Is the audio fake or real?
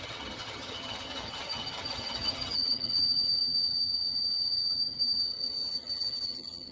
fake